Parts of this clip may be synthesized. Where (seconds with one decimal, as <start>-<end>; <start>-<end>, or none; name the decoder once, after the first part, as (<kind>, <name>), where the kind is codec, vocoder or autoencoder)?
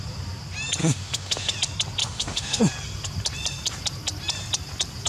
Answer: 0.8-1.5 (autoencoder, DAC-VAE); 2.0-2.6